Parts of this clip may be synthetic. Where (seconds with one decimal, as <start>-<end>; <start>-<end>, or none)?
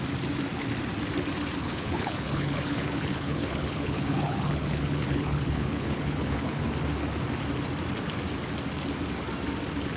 1.6-6.7